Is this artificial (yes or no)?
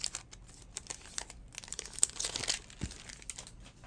no